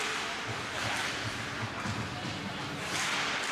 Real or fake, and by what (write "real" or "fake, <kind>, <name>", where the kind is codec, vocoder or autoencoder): real